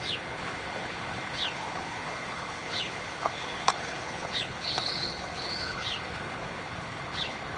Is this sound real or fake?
fake